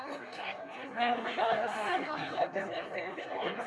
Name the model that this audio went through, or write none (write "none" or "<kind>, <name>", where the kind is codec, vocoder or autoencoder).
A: codec, SNAC